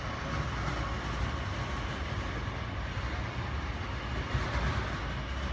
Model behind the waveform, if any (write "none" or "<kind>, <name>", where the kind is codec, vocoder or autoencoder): none